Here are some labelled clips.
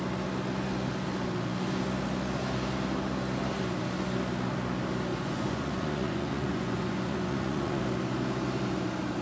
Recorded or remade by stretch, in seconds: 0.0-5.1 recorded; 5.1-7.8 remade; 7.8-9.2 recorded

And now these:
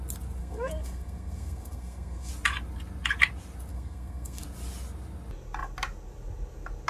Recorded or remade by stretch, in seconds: 0.0-0.4 recorded; 0.4-2.3 remade; 2.3-3.7 recorded; 3.7-4.4 remade; 4.4-6.9 recorded

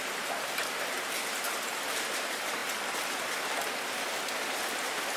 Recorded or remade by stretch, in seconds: 0.0-5.2 recorded

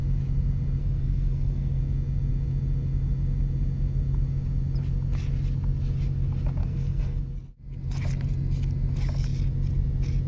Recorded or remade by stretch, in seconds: 0.0-0.8 recorded; 0.8-1.8 remade; 1.8-6.6 recorded; 6.6-7.2 remade; 7.2-10.3 recorded